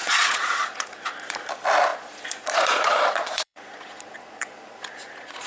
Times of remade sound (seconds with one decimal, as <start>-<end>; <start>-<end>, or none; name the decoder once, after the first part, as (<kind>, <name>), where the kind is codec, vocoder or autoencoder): 0.0-1.5 (vocoder, Vocos); 1.9-5.5